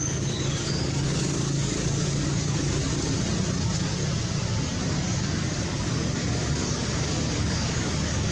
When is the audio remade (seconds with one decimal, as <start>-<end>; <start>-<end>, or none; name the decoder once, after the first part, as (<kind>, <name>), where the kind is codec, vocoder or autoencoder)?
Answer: 0.0-2.8 (codec, DAC); 3.6-4.0; 4.9-8.3